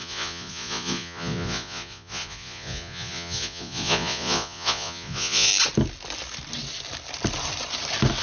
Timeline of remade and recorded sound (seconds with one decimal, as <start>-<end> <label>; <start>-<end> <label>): 0.0-5.5 remade; 5.5-8.2 recorded